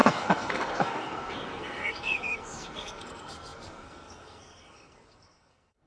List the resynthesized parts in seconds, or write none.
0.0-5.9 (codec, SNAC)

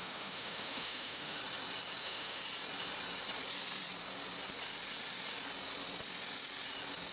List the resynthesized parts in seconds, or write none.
0.0-1.4 (autoencoder, DAC-VAE); 2.0-2.4

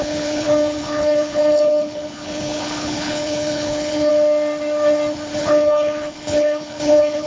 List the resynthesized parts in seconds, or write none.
0.0-4.1 (codec, HILCodec); 5.4-7.3

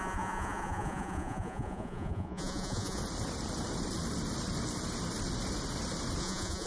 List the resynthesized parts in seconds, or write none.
0.0-3.0 (vocoder, Vocos); 6.2-6.7